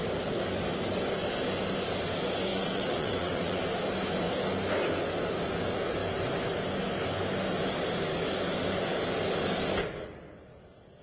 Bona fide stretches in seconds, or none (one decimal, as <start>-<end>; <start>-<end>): 0.0-2.5; 3.6-11.0